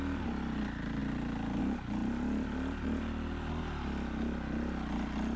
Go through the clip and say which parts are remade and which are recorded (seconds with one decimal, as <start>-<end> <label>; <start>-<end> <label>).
0.0-5.4 recorded

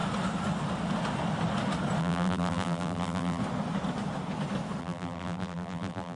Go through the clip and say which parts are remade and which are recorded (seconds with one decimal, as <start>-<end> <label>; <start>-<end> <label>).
0.0-2.0 recorded; 2.0-3.4 remade; 3.4-4.8 recorded; 4.8-6.2 remade

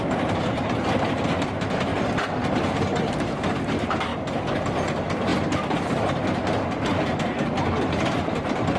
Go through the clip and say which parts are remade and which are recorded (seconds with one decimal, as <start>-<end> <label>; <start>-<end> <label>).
0.0-1.9 remade; 1.9-2.8 recorded; 2.8-8.8 remade

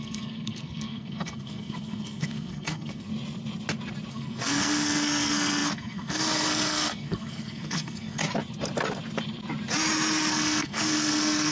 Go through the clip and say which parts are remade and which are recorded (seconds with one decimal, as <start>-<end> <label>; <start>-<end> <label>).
0.0-3.1 remade; 3.1-4.1 recorded; 4.1-8.2 remade; 8.2-10.3 recorded; 10.3-11.5 remade

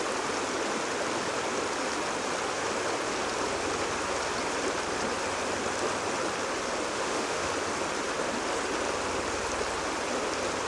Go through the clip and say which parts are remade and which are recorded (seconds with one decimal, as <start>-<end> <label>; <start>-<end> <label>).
0.0-6.9 recorded; 6.9-7.5 remade; 7.5-10.7 recorded

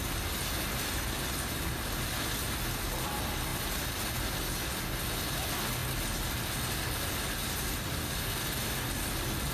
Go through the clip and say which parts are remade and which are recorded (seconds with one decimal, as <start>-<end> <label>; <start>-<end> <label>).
0.0-9.5 recorded

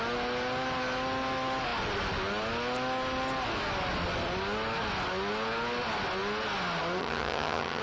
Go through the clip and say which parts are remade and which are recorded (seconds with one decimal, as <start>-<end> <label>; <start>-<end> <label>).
0.0-7.0 recorded; 7.0-7.8 remade

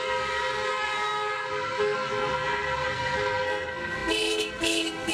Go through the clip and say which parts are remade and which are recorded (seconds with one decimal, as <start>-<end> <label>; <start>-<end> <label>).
0.0-5.1 remade